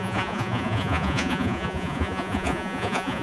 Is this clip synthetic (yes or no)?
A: yes